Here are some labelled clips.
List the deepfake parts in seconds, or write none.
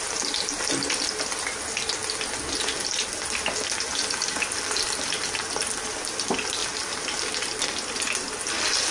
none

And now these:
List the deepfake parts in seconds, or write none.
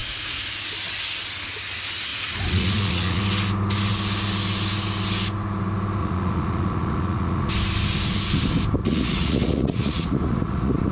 0.0-0.5 (vocoder, Vocos); 2.1-3.2; 6.0-7.5; 8.8-10.9